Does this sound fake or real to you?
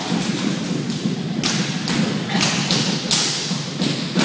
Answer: real